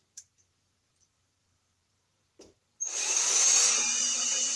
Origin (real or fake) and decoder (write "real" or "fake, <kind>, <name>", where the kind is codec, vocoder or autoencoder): fake, vocoder, BigVGAN v2